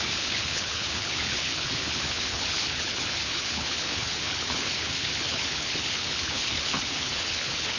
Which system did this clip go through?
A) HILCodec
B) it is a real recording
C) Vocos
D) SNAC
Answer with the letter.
A